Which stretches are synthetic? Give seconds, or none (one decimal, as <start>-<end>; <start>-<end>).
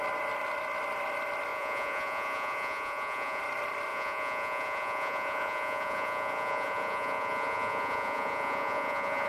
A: 1.5-3.4; 3.9-9.3